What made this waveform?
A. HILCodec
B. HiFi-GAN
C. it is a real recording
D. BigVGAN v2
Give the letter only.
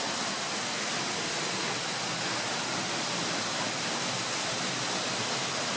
C